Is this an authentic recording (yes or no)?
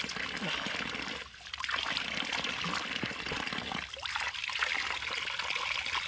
yes